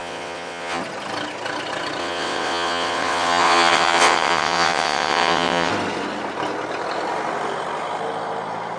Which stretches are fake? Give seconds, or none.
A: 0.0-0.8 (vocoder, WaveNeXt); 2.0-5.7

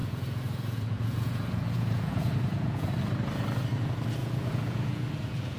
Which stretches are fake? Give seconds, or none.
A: 0.0-2.9 (vocoder, Vocos); 4.2-5.6

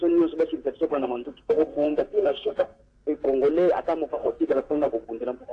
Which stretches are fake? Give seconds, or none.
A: 0.9-2.8 (codec, SNAC); 4.2-4.9

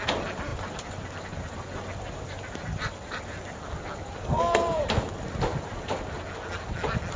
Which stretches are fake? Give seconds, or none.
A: 4.2-4.8 (codec, SNAC)

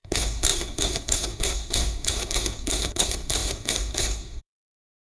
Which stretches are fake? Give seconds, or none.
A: 0.0-5.1 (codec, SNAC)

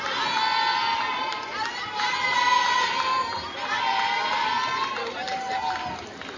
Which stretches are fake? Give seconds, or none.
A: 0.7-4.5 (vocoder, BigVGAN v2)

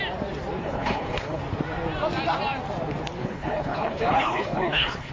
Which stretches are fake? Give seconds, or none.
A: 0.6-1.4 (codec, HILCodec); 3.2-5.1

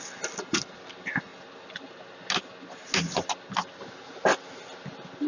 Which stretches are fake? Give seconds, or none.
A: none